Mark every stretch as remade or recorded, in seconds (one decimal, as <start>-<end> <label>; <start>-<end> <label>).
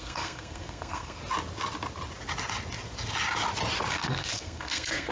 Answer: 0.0-1.2 remade; 1.2-3.9 recorded; 3.9-5.1 remade